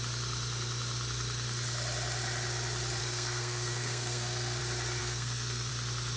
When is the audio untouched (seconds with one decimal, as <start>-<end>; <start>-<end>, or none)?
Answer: 0.0-3.0; 4.6-5.0; 5.7-6.2